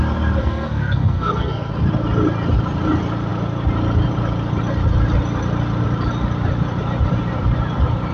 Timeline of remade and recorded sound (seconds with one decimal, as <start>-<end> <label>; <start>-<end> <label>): 0.0-0.4 recorded; 0.4-1.7 remade; 1.7-8.1 recorded